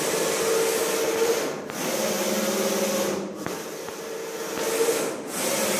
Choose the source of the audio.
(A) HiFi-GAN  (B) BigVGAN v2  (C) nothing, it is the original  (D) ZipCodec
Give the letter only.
C